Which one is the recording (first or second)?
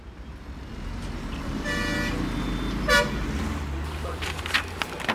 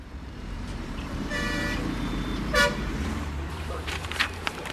first